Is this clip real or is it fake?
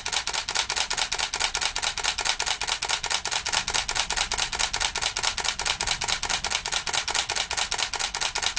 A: real